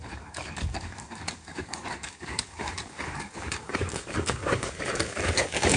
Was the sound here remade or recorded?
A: remade